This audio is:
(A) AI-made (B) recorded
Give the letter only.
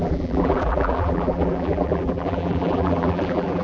A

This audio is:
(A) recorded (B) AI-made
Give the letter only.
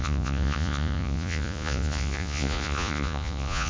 B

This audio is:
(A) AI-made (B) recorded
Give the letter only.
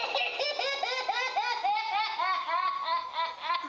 B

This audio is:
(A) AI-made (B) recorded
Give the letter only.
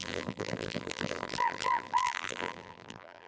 A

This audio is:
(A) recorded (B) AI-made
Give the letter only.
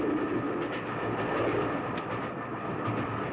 A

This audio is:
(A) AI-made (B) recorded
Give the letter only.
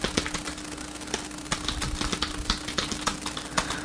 B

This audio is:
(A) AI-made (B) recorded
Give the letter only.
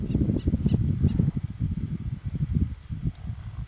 B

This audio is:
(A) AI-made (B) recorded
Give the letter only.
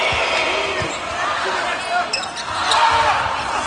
B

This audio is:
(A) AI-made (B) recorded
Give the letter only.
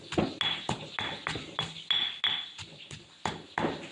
B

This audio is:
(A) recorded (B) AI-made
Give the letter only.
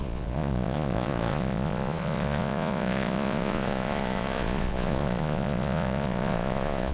B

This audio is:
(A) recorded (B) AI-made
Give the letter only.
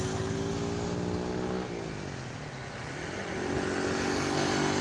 A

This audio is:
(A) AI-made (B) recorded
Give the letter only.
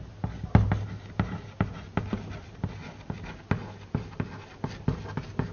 B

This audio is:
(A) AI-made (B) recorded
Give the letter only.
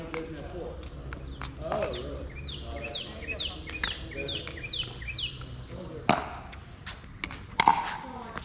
B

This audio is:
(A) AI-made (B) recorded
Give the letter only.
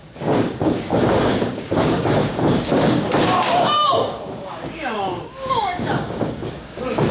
A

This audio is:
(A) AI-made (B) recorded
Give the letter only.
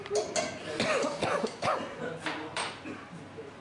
A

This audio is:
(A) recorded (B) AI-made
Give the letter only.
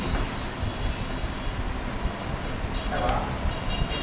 A